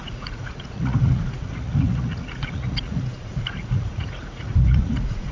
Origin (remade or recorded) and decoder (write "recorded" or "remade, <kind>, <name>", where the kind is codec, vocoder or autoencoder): remade, vocoder, Vocos